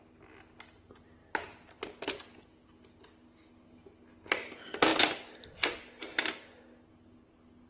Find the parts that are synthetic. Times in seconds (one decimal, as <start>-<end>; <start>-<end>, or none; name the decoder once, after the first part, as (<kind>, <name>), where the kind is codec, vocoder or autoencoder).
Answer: none